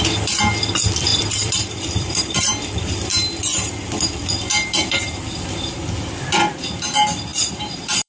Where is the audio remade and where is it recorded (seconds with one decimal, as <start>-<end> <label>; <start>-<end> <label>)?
0.0-1.1 recorded; 1.1-2.5 remade; 2.5-7.3 recorded; 7.3-8.1 remade